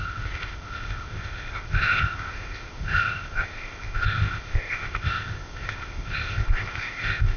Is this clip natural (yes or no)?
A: no